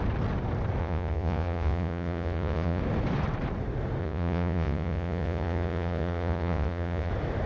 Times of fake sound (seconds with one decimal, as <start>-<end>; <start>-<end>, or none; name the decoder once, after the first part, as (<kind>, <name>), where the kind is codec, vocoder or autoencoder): 0.8-2.8 (vocoder, Vocos); 4.0-7.1